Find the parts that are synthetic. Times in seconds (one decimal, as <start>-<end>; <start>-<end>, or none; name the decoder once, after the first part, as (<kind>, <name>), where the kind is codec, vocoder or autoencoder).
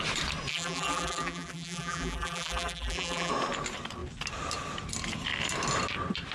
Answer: 0.5-3.3 (vocoder, BigVGAN v2)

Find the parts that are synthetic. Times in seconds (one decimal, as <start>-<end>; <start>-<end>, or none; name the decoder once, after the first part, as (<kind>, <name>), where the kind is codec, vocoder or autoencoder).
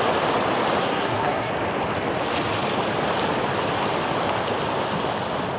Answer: 0.8-1.5 (codec, SNAC)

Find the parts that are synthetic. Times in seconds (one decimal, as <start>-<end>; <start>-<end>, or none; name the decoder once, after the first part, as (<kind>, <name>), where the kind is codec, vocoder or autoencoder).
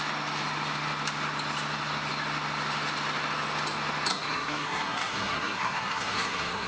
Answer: 4.1-6.7 (codec, SNAC)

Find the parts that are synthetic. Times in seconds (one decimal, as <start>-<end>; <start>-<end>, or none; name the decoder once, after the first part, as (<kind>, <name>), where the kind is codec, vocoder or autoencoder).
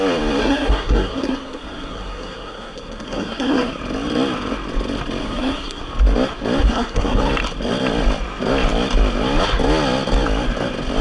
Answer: 0.4-3.8 (codec, SNAC); 5.2-5.8; 6.6-7.2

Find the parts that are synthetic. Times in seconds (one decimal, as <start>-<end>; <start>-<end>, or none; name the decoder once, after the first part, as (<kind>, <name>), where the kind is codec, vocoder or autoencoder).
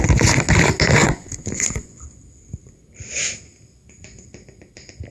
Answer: 1.0-2.0 (vocoder, Vocos)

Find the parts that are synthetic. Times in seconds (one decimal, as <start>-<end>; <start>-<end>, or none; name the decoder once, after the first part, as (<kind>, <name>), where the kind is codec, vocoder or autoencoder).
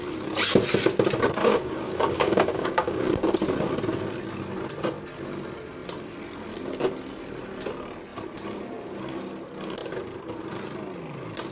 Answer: 1.4-3.0 (codec, DAC)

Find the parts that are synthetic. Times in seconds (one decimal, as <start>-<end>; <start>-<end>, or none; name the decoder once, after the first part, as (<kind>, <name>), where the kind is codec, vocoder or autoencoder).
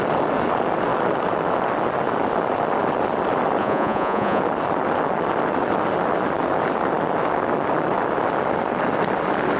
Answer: 3.6-4.4 (vocoder, Vocos)